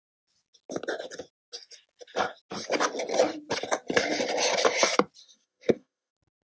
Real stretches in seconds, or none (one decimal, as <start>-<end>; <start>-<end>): 0.0-5.2; 6.1-6.5